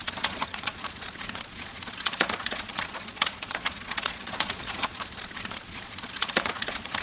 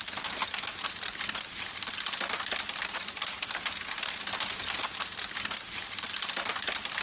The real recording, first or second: second